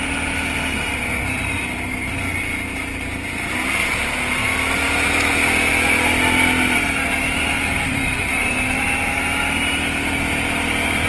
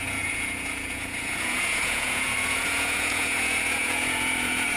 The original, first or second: first